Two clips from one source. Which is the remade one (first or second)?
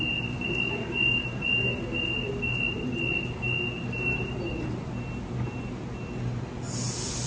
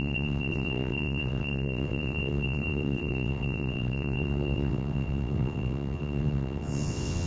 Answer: second